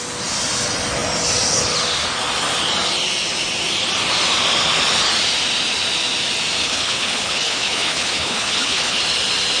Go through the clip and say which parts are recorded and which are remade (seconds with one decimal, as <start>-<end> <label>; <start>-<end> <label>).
0.0-6.6 recorded; 6.6-9.0 remade; 9.0-9.6 recorded